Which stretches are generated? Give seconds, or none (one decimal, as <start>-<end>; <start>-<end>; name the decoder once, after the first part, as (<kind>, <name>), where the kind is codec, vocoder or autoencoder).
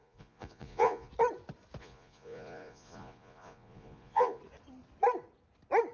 0.0-1.1 (vocoder, Vocos); 1.8-4.4